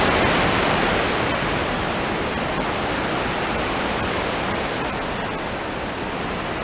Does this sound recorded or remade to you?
recorded